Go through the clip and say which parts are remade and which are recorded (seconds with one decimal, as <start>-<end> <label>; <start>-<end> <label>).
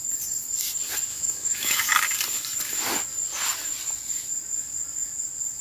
0.0-1.1 recorded; 1.1-1.9 remade; 1.9-5.6 recorded